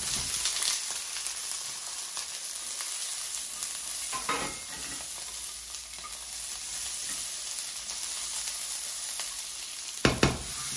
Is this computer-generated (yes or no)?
no